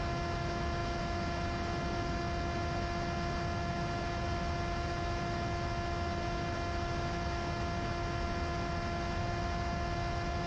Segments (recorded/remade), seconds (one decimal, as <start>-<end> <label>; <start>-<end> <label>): 0.0-10.5 recorded